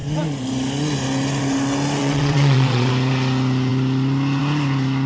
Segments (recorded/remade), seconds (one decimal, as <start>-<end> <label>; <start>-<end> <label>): 0.0-2.0 recorded; 2.0-2.9 remade; 2.9-5.1 recorded